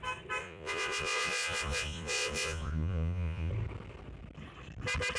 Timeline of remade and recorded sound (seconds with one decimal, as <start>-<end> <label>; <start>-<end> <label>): 0.0-0.4 recorded; 0.4-3.5 remade; 3.5-5.2 recorded

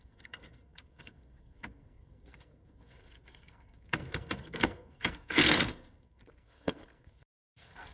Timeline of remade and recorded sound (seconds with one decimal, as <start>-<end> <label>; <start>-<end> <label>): 0.0-7.9 remade

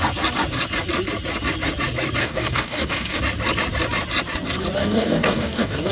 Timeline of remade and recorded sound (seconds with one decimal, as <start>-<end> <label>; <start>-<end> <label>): 0.0-2.2 recorded; 2.2-3.2 remade; 3.2-4.8 recorded; 4.8-5.9 remade

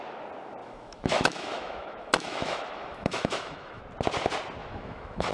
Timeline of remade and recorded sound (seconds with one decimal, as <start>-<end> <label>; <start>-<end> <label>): 0.0-0.6 recorded; 0.6-3.8 remade; 3.8-4.6 recorded; 4.6-5.3 remade

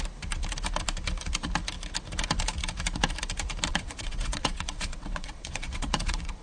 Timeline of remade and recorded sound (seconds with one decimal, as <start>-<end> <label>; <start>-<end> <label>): 0.0-3.7 recorded; 3.7-6.4 remade

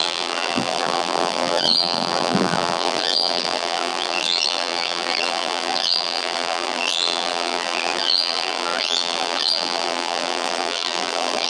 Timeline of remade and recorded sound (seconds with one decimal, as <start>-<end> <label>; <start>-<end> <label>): 0.0-11.5 remade

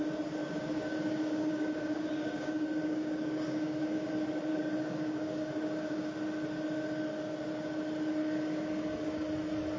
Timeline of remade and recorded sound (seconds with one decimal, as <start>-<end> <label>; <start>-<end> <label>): 0.0-0.4 recorded; 0.4-4.1 remade; 4.1-4.5 recorded; 4.5-6.1 remade; 6.1-8.2 recorded; 8.2-9.3 remade; 9.3-9.8 recorded

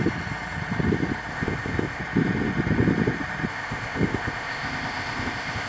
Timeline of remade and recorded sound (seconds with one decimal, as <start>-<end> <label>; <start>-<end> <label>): 0.0-1.3 recorded; 1.3-2.0 remade; 2.0-3.5 recorded; 3.5-5.7 remade